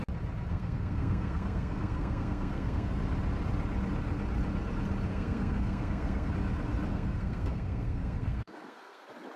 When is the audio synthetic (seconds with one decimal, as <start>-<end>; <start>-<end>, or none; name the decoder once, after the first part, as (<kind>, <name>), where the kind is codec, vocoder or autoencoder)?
0.5-3.0 (codec, SNAC); 5.1-6.3; 6.9-9.0